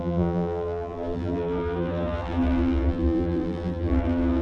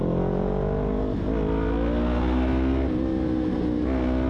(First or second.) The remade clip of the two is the first